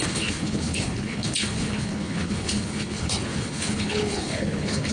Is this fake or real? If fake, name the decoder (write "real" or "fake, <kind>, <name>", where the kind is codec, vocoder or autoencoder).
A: fake, codec, HILCodec